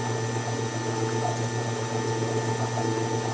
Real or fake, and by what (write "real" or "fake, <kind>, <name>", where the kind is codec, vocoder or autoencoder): real